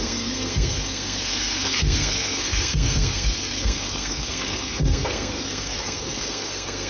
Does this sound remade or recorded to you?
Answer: remade